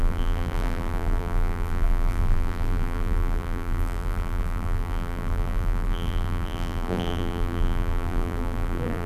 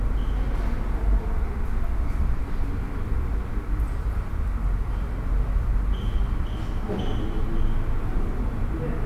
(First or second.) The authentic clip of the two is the second